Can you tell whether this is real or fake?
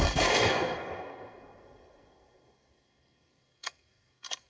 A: fake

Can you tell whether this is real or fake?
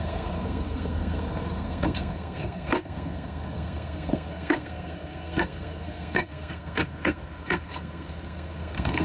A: fake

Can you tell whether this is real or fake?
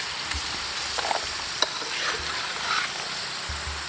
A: real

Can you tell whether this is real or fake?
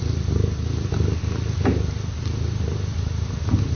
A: real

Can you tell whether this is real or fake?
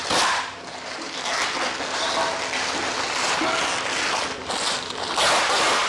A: real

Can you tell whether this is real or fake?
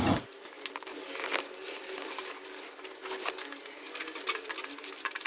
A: real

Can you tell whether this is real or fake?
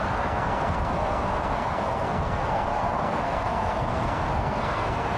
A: fake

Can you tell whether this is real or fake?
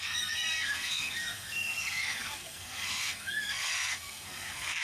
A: fake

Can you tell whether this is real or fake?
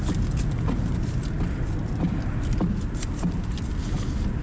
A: real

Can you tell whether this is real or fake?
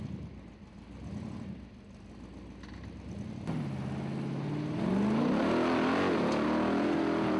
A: real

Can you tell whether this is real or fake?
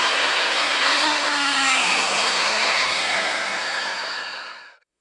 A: fake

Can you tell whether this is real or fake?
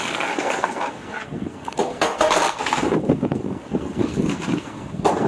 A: fake